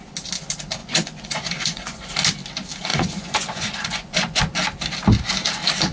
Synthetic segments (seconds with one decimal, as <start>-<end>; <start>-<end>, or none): 0.8-2.1; 2.9-4.4